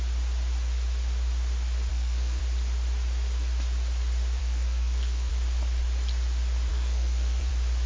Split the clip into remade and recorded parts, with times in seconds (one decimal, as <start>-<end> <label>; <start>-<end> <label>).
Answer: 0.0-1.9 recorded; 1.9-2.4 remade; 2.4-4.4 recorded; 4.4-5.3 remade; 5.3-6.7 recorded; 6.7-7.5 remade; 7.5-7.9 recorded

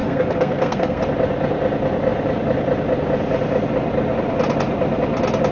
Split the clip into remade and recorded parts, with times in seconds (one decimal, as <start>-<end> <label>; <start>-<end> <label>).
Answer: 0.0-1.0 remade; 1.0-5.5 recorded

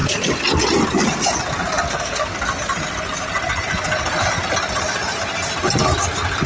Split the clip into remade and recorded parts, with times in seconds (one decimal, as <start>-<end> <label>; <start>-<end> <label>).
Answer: 0.0-1.9 recorded; 1.9-2.3 remade; 2.3-6.5 recorded

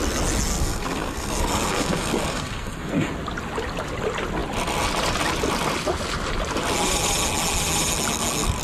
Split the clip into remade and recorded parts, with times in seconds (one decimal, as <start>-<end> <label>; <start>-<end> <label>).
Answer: 0.0-0.5 recorded; 0.5-3.1 remade; 3.1-8.6 recorded